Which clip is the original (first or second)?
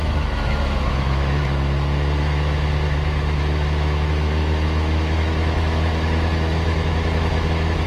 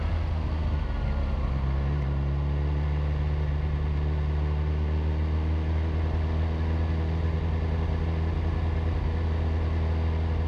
second